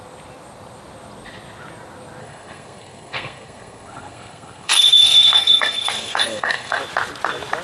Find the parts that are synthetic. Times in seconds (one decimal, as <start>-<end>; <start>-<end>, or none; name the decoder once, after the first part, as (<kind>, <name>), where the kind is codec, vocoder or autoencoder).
2.2-6.8 (codec, SNAC)